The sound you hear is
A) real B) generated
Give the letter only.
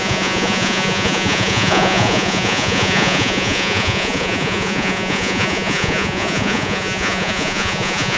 B